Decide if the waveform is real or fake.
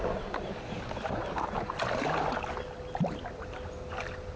real